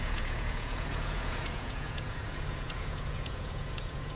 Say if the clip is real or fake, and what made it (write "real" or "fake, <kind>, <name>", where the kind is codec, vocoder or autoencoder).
fake, vocoder, Vocos